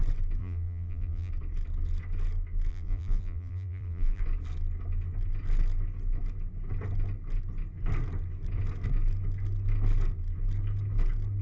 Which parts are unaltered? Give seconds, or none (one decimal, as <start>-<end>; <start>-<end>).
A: 0.0-0.4; 1.3-2.7; 4.2-11.4